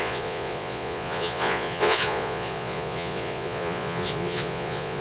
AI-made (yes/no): yes